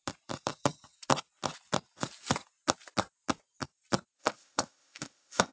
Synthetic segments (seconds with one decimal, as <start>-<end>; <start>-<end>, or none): 4.2-5.5